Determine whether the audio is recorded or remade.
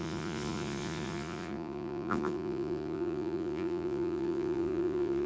remade